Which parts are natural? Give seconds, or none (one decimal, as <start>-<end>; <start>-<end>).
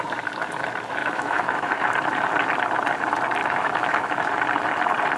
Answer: 0.0-1.0; 1.8-3.4; 4.3-5.2